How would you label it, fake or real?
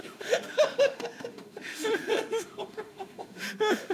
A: fake